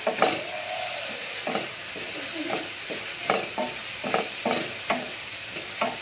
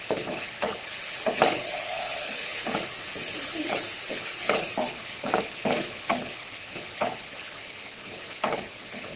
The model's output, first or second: second